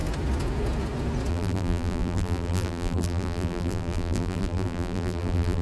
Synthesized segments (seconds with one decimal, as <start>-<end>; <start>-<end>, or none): 1.3-5.6